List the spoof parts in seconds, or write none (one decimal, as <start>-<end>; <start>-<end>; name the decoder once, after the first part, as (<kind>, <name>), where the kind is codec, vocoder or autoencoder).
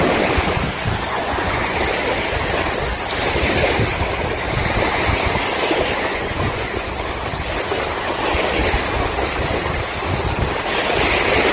1.1-1.8 (vocoder, Vocos); 6.1-6.9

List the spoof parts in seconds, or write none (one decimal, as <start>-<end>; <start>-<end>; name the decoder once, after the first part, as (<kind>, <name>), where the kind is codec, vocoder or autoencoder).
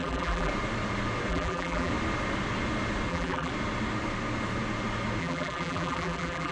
0.0-0.5 (vocoder, BigVGAN v2); 1.3-1.9; 3.1-3.5; 5.2-6.5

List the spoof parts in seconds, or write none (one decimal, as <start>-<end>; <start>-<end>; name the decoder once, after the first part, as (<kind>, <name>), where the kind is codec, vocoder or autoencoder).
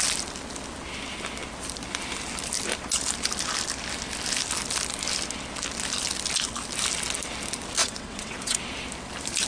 7.8-8.6 (vocoder, WaveNeXt)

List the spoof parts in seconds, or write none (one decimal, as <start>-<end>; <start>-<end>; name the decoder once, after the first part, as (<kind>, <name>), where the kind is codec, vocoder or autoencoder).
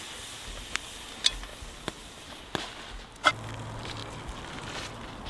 none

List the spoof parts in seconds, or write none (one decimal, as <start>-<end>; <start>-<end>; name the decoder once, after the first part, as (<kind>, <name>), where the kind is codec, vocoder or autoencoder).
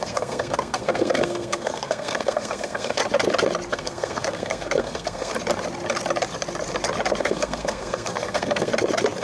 0.0-3.0 (codec, SNAC); 3.7-5.3; 7.2-8.7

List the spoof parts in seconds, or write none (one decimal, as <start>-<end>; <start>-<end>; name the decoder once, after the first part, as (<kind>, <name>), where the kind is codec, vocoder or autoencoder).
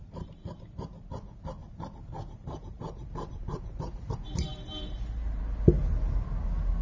0.0-1.1 (vocoder, BigVGAN v2); 1.6-5.4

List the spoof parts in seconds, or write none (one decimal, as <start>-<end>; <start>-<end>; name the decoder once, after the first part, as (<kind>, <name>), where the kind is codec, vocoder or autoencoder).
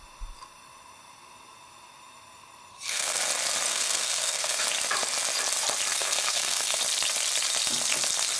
2.7-3.2 (codec, SNAC); 3.7-4.6; 5.9-6.8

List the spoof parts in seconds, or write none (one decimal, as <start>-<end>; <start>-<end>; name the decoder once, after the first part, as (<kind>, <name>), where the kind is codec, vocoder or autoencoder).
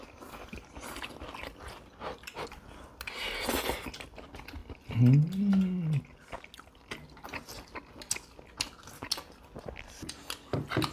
none